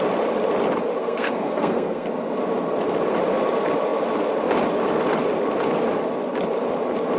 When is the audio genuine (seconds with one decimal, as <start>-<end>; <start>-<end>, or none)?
0.0-1.0; 2.1-7.2